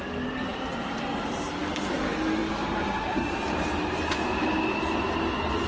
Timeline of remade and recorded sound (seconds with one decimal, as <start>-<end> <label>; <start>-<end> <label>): 0.0-5.7 recorded